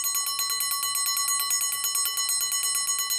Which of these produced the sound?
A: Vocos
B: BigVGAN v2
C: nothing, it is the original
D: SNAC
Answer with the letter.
C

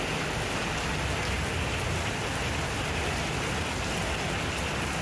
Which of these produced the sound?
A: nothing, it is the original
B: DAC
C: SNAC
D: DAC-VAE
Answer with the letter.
A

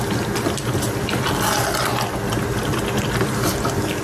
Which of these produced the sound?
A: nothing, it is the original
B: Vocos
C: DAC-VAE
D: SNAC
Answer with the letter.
A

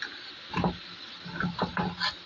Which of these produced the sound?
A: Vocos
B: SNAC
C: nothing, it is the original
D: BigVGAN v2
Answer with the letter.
C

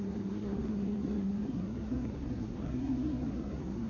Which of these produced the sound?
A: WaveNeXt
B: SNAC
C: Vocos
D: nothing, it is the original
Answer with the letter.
B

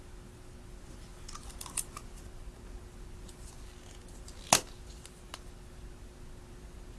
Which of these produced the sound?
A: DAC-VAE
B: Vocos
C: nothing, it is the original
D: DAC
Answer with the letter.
C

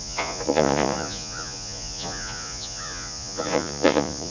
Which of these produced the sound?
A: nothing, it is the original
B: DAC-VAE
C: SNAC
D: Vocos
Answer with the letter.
D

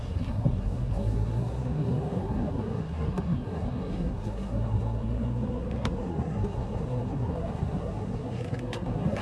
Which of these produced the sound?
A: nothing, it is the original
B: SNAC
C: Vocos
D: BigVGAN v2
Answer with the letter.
B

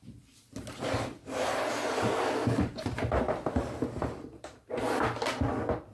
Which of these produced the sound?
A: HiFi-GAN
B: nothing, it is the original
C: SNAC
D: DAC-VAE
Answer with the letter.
B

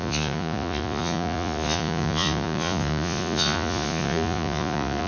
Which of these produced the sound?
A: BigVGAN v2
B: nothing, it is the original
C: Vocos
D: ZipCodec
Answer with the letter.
C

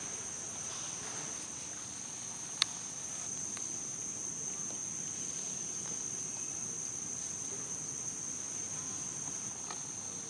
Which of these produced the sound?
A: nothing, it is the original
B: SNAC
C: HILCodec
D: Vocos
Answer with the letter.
A